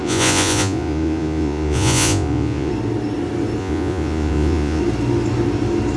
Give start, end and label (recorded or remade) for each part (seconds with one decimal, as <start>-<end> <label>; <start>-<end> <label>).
0.0-2.7 remade; 2.7-3.6 recorded; 3.6-4.8 remade; 4.8-6.0 recorded